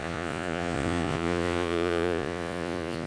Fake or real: fake